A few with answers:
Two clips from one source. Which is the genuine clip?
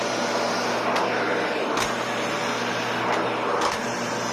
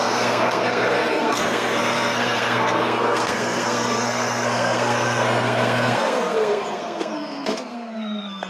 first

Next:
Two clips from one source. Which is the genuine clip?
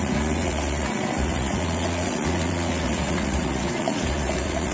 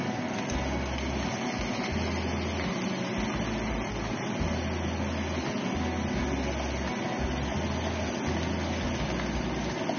second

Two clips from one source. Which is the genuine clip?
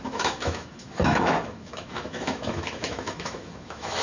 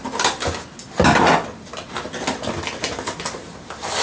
second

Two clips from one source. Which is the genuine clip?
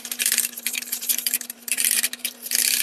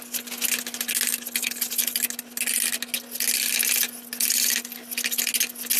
second